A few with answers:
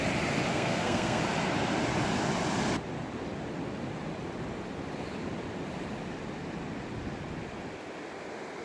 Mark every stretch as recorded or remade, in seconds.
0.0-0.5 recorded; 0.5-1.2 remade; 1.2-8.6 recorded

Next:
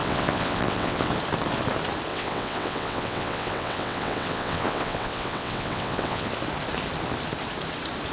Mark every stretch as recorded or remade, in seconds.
0.0-1.1 remade; 1.1-2.1 recorded; 2.1-6.3 remade; 6.3-8.1 recorded

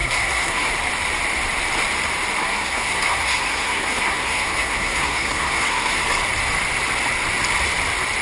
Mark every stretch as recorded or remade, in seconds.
0.0-0.7 remade; 0.7-2.4 recorded; 2.4-6.0 remade; 6.0-8.2 recorded

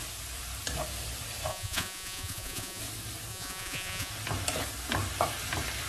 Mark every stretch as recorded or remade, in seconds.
0.0-1.5 recorded; 1.5-2.8 remade; 2.8-3.3 recorded; 3.3-4.1 remade; 4.1-5.9 recorded